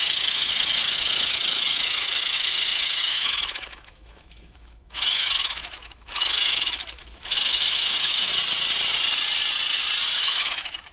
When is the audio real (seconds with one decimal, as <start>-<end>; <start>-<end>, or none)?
8.3-10.2